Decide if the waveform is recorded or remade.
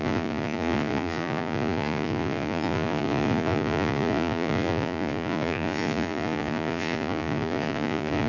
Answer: remade